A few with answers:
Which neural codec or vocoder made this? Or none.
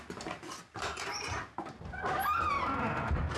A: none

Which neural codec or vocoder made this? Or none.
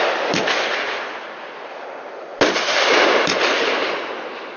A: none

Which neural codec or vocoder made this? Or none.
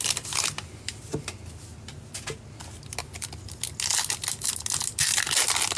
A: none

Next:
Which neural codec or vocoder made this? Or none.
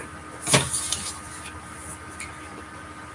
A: none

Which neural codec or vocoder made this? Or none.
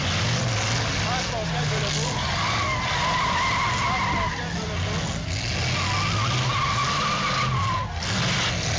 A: none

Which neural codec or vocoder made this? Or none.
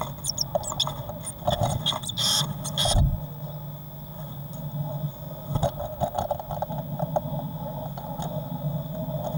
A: none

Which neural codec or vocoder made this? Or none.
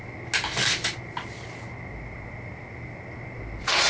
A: none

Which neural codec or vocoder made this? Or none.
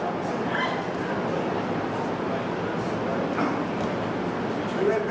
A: none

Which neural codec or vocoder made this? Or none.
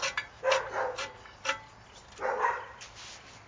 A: none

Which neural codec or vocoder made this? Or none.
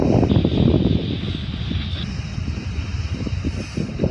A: none